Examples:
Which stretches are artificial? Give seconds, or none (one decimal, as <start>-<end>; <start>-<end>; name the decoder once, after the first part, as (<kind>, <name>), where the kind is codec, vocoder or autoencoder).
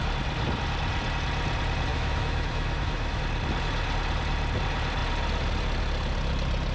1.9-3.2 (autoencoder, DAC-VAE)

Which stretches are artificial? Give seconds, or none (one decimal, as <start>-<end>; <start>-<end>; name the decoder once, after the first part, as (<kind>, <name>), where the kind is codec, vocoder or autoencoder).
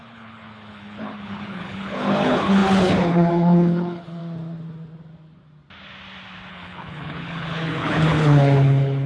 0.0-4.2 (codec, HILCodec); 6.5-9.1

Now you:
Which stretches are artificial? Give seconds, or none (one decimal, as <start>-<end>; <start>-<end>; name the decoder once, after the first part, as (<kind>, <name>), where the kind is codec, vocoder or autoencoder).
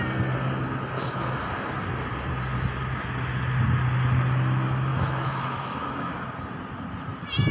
4.9-6.1 (autoencoder, DAC-VAE)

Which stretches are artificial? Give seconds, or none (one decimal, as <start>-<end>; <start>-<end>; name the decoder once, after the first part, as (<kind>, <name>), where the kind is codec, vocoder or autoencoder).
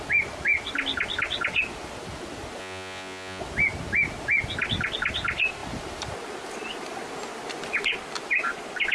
2.6-3.4 (vocoder, Vocos)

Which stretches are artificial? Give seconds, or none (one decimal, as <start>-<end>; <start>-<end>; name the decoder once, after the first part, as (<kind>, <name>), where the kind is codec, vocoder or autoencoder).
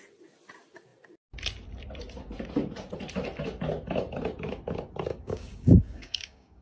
5.1-6.6 (codec, DAC)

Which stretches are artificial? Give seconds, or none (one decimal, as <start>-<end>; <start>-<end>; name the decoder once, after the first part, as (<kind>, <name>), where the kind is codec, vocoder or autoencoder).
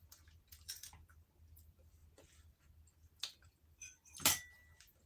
none